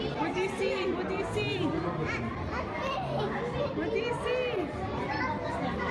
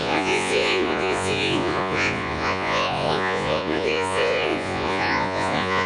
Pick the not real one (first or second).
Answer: second